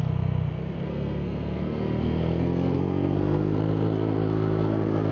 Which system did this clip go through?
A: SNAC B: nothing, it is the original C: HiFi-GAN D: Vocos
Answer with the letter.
A